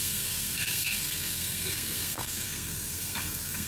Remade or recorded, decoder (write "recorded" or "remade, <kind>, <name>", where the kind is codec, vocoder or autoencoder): remade, codec, SNAC